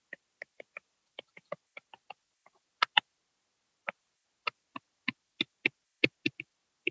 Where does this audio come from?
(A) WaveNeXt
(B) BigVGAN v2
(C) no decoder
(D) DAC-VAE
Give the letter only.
C